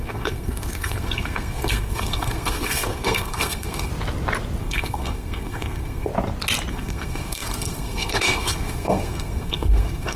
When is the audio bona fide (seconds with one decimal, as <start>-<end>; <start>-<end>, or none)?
3.9-4.6; 6.1-6.7